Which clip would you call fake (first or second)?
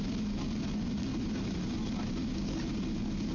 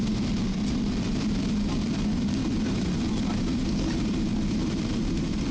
second